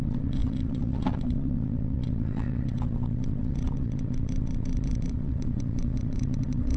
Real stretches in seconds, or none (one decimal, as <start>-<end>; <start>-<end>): none